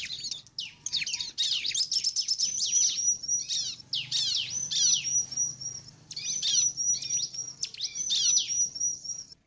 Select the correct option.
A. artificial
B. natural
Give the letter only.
B